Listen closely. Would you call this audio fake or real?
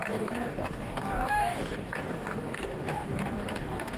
fake